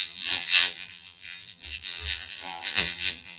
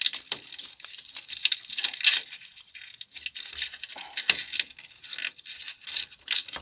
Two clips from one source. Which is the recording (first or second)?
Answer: second